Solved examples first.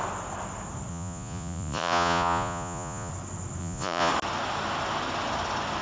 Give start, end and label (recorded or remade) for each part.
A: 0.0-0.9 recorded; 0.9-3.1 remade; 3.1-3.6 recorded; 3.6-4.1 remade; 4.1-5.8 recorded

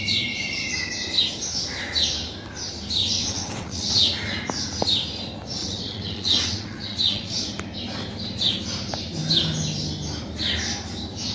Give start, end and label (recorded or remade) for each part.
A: 0.0-3.0 recorded; 3.0-3.9 remade; 3.9-5.6 recorded; 5.6-7.4 remade; 7.4-11.3 recorded

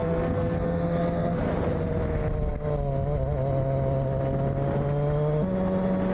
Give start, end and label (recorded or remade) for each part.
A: 0.0-1.5 remade; 1.5-6.1 recorded